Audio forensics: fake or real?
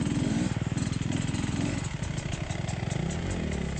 real